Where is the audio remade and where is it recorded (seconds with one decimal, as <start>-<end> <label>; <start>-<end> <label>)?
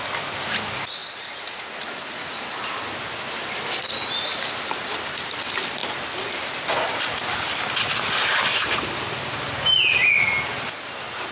0.0-11.3 recorded